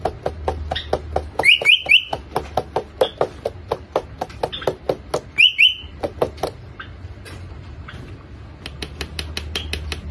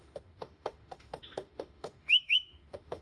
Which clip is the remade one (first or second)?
second